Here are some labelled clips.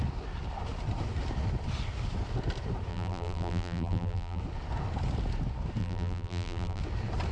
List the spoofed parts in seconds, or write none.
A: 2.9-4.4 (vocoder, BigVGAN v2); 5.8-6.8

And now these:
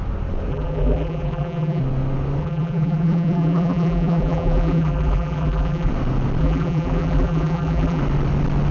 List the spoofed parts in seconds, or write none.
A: 0.5-1.8 (vocoder, BigVGAN v2); 2.4-5.9; 6.4-8.0